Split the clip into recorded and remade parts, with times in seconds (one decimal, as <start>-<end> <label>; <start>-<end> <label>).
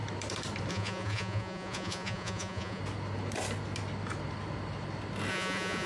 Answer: 0.0-0.7 recorded; 0.7-2.8 remade; 2.8-5.3 recorded; 5.3-5.9 remade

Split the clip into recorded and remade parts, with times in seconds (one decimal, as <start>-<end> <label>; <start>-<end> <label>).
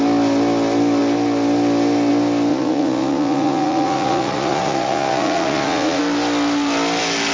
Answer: 0.0-2.5 recorded; 2.5-6.0 remade; 6.0-7.3 recorded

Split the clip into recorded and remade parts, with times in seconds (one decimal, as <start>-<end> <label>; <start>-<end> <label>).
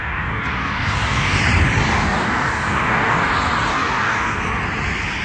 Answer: 0.0-1.4 remade; 1.4-1.9 recorded; 1.9-3.3 remade; 3.3-3.7 recorded; 3.7-4.4 remade; 4.4-5.2 recorded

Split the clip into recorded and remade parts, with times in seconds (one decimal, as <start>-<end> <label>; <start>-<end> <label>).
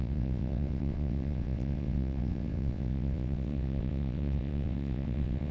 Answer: 0.0-5.5 remade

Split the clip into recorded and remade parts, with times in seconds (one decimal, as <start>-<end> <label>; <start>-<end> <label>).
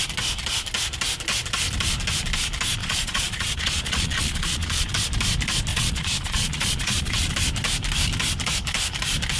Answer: 0.0-2.8 recorded; 2.8-4.9 remade; 4.9-5.7 recorded; 5.7-7.3 remade; 7.3-9.4 recorded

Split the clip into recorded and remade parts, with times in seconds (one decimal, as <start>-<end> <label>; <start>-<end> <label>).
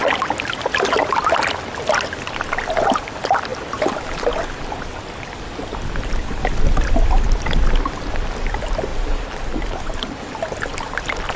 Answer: 0.0-11.4 recorded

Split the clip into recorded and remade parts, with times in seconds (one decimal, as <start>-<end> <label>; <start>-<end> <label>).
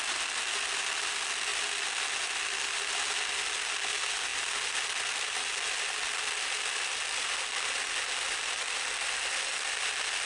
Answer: 0.0-10.3 recorded